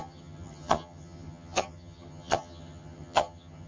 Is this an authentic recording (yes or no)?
no